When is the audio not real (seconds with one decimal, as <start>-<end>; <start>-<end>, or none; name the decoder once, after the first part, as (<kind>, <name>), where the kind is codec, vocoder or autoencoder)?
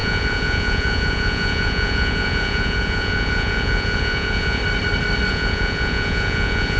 0.0-4.6 (vocoder, Vocos); 5.3-6.8